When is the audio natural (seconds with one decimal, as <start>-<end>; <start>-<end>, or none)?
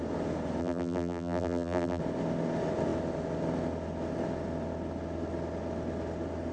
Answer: 0.0-0.6; 2.0-6.5